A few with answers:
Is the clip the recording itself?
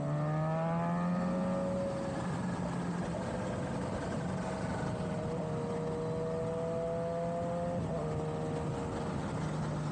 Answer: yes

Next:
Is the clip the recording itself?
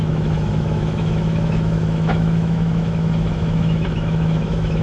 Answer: no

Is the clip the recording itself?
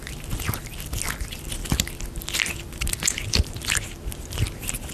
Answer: yes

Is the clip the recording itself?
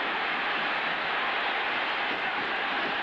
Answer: yes